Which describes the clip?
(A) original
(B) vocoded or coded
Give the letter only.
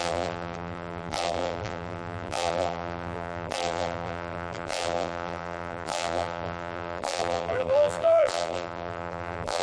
B